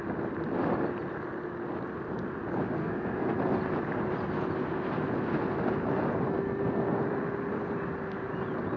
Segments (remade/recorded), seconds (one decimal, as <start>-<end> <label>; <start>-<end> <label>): 0.0-2.8 recorded; 2.8-3.4 remade; 3.4-8.8 recorded